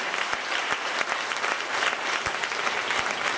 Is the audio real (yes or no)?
yes